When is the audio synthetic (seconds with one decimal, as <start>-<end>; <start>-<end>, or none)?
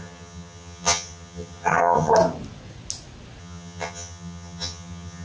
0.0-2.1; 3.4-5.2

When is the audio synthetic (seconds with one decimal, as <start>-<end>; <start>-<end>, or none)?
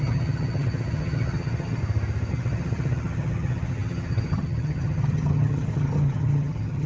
0.0-1.8; 2.3-6.9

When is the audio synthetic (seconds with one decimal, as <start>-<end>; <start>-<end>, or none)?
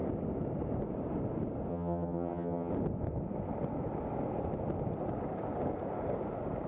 1.7-2.7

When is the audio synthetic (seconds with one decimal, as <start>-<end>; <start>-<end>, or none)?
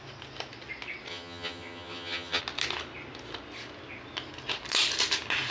1.1-2.4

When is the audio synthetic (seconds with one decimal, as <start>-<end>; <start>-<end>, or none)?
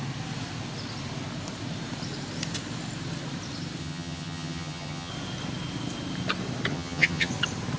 3.8-5.1; 6.7-7.3